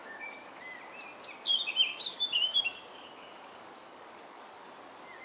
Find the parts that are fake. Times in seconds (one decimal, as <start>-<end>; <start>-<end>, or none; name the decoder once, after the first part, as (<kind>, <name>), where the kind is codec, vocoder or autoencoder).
0.0-0.6 (codec, DAC); 1.9-4.7

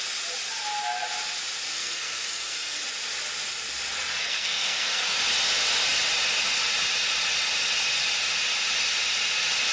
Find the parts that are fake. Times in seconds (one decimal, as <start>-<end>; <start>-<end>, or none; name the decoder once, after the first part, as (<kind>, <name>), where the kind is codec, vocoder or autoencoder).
1.7-2.8 (codec, SNAC); 4.2-5.2

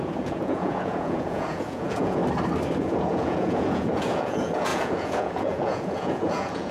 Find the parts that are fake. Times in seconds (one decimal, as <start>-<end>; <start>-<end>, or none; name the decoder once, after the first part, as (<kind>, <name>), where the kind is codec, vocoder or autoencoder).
0.0-2.2 (vocoder, Vocos); 2.8-6.7

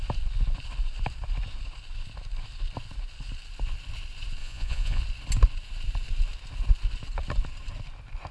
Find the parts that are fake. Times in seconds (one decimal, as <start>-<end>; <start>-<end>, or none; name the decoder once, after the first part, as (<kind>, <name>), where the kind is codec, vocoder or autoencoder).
4.4-5.0 (vocoder, Vocos)

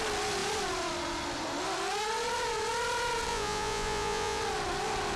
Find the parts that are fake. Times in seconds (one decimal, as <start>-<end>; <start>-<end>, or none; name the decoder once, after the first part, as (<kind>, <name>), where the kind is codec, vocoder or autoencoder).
3.3-4.4 (vocoder, Vocos)

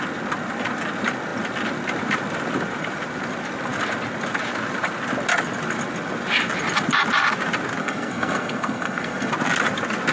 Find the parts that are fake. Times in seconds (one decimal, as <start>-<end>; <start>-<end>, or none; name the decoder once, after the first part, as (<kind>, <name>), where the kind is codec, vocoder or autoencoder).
7.8-9.3 (codec, SNAC)

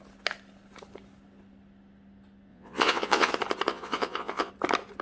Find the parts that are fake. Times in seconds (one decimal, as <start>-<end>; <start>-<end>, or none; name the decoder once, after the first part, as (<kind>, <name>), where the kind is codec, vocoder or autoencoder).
2.5-3.3 (vocoder, Vocos); 3.7-4.5

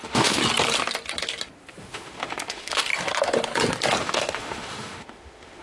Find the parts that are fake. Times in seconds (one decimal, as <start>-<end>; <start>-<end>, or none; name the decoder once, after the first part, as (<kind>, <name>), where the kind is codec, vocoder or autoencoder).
0.0-0.4 (autoencoder, DAC-VAE); 1.8-2.9; 4.0-5.6